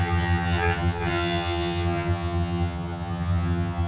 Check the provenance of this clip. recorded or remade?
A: remade